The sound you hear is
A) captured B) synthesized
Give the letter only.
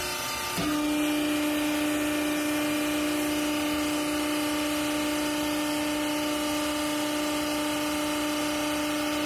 A